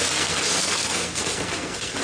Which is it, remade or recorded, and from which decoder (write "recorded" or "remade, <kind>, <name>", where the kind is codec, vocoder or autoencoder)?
remade, codec, SNAC